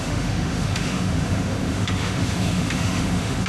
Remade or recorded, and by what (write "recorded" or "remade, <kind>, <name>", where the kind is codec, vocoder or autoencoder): remade, autoencoder, DAC-VAE